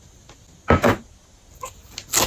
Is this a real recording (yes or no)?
yes